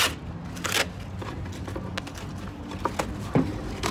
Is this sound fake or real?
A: real